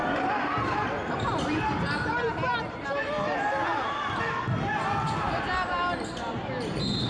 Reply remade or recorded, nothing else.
recorded